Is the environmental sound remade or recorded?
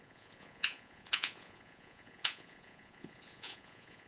remade